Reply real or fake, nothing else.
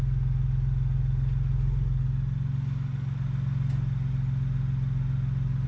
real